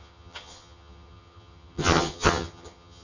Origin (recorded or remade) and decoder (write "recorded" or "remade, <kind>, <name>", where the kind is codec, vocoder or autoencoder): remade, vocoder, HiFi-GAN